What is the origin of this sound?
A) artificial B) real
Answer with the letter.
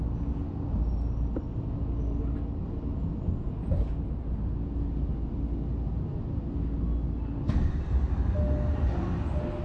B